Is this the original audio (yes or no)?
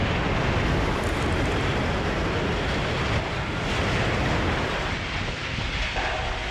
yes